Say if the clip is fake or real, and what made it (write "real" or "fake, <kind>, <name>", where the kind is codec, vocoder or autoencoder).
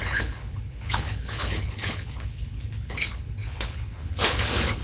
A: fake, codec, HILCodec